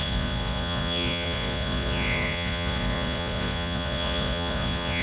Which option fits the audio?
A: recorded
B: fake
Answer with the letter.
B